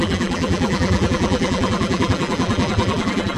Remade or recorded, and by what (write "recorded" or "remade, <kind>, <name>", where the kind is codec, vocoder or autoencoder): remade, vocoder, BigVGAN v2